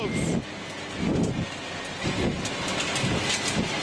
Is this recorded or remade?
recorded